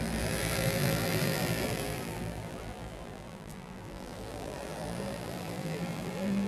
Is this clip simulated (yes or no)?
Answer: yes